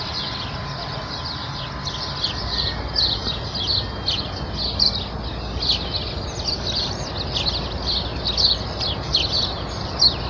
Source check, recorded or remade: recorded